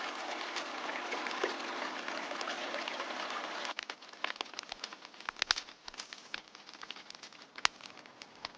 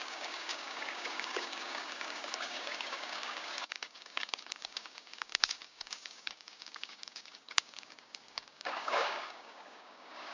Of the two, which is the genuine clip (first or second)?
first